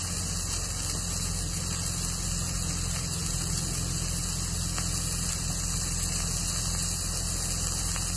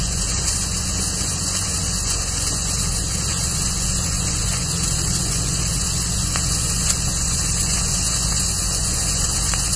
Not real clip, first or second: second